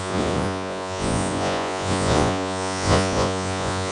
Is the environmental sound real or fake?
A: fake